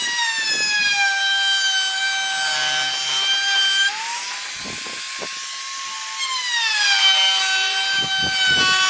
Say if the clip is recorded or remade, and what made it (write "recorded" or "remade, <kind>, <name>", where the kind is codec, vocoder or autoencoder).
recorded